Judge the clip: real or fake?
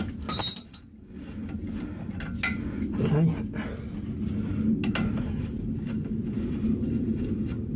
real